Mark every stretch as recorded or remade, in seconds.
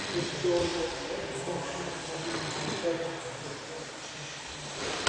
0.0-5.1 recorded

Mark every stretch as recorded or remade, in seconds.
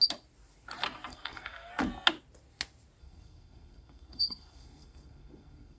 0.0-1.1 recorded; 1.1-1.7 remade; 1.7-3.0 recorded; 3.0-5.8 remade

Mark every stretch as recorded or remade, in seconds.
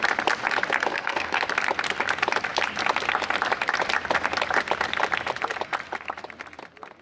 0.0-0.9 recorded; 0.9-1.4 remade; 1.4-7.0 recorded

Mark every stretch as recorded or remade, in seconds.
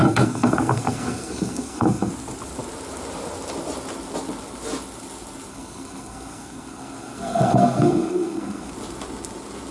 0.0-2.1 remade; 2.1-5.5 recorded; 5.5-8.7 remade; 8.7-9.7 recorded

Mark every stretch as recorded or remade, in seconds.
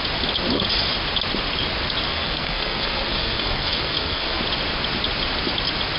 0.0-2.1 recorded; 2.1-4.4 remade; 4.4-6.0 recorded